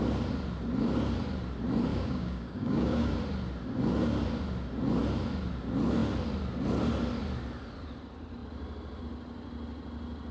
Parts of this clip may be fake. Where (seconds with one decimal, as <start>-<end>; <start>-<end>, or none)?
1.9-3.1